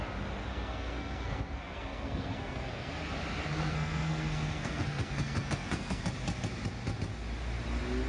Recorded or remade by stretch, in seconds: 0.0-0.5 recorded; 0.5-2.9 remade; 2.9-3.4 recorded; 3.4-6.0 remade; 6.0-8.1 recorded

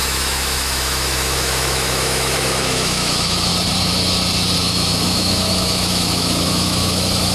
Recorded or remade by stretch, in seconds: 0.0-3.5 remade; 3.5-4.6 recorded; 4.6-7.3 remade

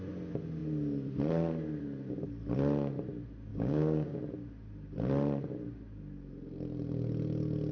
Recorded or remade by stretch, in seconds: 0.0-3.5 recorded; 3.5-4.2 remade; 4.2-7.7 recorded

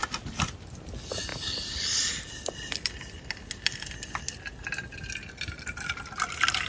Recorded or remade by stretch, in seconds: 0.0-1.3 recorded; 1.3-3.0 remade; 3.0-6.7 recorded

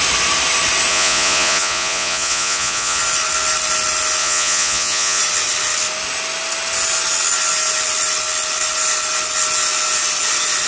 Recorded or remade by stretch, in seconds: 0.0-0.9 recorded; 0.9-3.0 remade; 3.0-4.2 recorded; 4.2-5.2 remade; 5.2-10.7 recorded